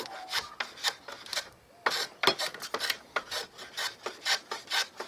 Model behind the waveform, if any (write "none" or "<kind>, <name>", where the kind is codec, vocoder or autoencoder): none